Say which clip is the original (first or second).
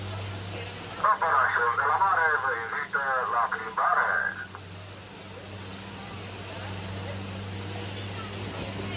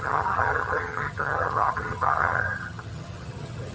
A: first